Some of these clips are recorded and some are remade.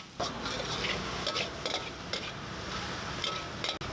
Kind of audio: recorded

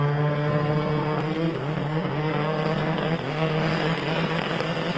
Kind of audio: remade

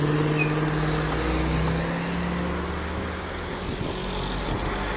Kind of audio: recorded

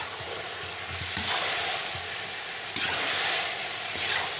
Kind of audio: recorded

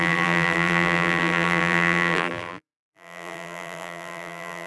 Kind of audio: remade